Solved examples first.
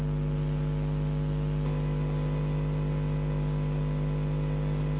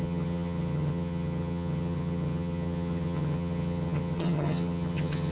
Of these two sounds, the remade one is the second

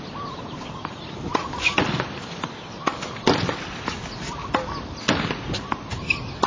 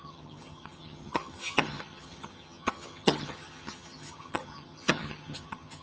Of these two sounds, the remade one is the second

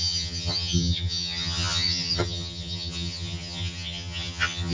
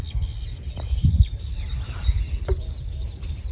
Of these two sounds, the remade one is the first